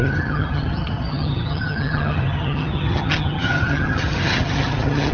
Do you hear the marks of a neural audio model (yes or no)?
yes